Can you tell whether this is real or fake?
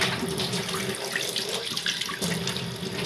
real